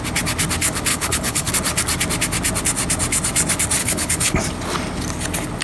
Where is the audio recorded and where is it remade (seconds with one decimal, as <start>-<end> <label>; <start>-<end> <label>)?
0.0-0.9 recorded; 0.9-1.5 remade; 1.5-3.8 recorded; 3.8-4.4 remade; 4.4-5.6 recorded

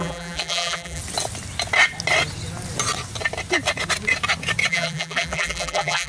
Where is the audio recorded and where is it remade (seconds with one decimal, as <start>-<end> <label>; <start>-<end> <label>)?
0.0-1.0 remade; 1.0-4.7 recorded; 4.7-6.1 remade

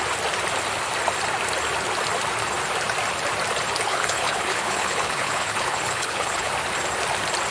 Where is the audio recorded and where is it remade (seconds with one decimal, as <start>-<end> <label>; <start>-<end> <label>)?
0.0-3.9 recorded; 3.9-6.5 remade; 6.5-7.5 recorded

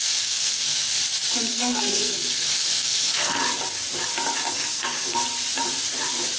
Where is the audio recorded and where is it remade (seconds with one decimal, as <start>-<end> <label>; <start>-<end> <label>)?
0.0-0.9 remade; 0.9-1.5 recorded; 1.5-3.4 remade; 3.4-4.5 recorded; 4.5-5.2 remade; 5.2-6.4 recorded

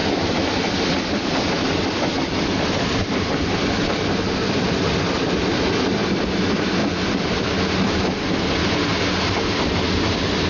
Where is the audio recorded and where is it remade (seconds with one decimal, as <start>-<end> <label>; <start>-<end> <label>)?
0.0-5.3 remade; 5.3-6.8 recorded; 6.8-8.0 remade; 8.0-10.5 recorded

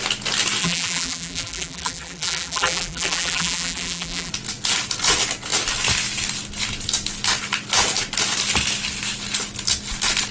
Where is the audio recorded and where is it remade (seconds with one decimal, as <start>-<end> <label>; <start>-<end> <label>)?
0.0-0.6 recorded; 0.6-4.3 remade; 4.3-10.3 recorded

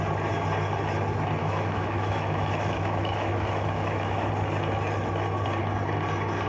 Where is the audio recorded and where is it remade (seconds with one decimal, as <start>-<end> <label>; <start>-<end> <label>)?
0.0-1.4 recorded; 1.4-4.3 remade; 4.3-6.5 recorded

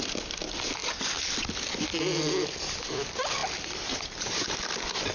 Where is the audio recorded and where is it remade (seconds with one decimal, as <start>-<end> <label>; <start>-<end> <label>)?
0.0-5.1 recorded